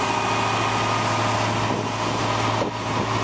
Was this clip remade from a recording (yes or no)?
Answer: no